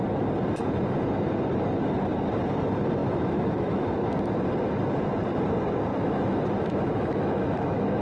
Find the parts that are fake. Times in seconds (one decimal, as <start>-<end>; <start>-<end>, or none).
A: 3.0-3.8; 5.9-8.0